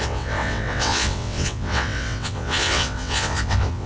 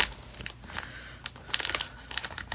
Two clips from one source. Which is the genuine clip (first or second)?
second